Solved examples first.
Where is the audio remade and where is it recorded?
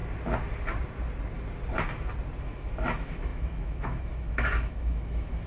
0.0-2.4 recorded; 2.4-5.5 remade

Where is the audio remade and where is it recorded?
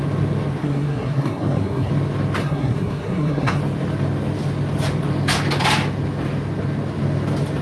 0.0-0.6 recorded; 0.6-1.9 remade; 1.9-2.4 recorded; 2.4-3.6 remade; 3.6-7.6 recorded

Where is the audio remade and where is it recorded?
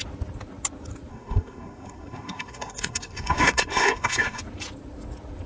0.0-1.1 recorded; 1.1-4.4 remade; 4.4-5.5 recorded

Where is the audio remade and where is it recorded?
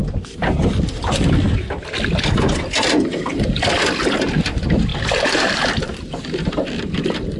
0.0-4.9 recorded; 4.9-6.5 remade; 6.5-7.4 recorded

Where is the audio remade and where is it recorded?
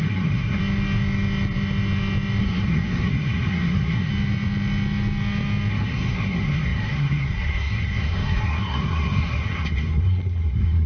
0.0-0.6 remade; 0.6-2.4 recorded; 2.4-4.1 remade; 4.1-5.7 recorded; 5.7-10.9 remade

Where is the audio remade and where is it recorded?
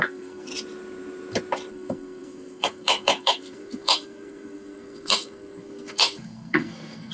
0.0-0.5 remade; 0.5-1.7 recorded; 1.7-7.1 remade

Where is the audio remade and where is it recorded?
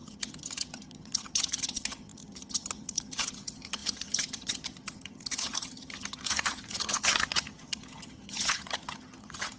0.0-9.6 remade